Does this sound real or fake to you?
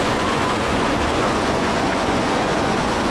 fake